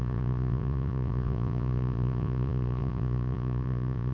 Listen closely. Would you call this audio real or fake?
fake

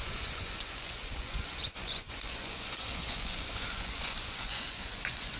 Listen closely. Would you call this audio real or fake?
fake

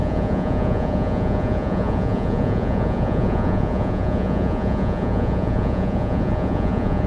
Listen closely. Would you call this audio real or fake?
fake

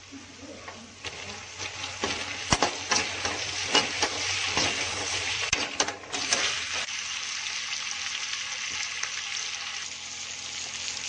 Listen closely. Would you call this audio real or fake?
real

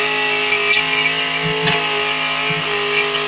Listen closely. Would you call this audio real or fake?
real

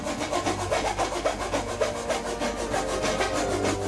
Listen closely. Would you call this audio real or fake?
real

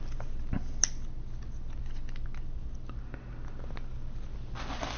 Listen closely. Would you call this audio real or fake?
real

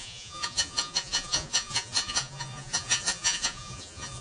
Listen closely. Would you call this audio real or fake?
fake